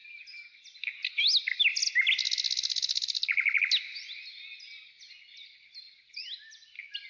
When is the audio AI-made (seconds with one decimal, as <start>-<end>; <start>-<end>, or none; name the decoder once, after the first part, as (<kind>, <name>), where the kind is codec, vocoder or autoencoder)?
none